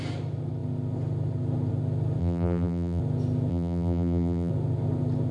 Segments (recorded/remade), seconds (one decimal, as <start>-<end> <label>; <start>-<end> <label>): 0.0-2.2 recorded; 2.2-3.0 remade; 3.0-3.5 recorded; 3.5-4.5 remade; 4.5-5.3 recorded